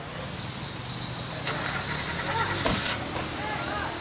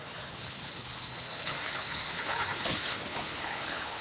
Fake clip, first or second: second